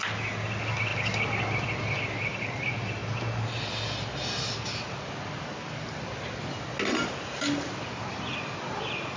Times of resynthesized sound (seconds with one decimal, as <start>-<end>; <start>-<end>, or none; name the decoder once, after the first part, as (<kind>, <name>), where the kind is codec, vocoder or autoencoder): none